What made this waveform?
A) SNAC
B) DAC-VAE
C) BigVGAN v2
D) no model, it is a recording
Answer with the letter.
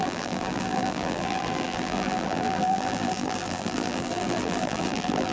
C